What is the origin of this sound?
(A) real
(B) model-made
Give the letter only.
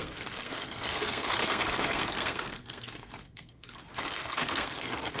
B